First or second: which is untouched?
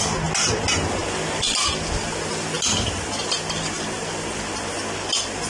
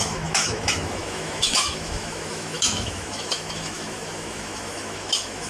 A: first